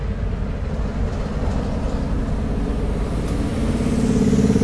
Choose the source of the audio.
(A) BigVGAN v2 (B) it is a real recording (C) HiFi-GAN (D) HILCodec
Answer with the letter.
B